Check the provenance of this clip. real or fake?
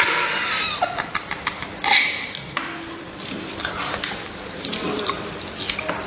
fake